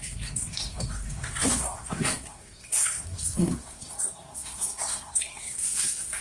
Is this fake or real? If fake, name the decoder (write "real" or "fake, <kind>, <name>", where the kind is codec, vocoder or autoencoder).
fake, codec, SNAC